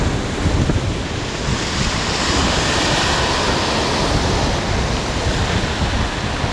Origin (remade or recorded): recorded